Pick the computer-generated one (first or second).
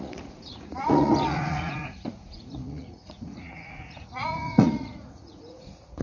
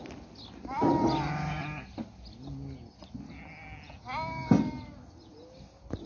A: first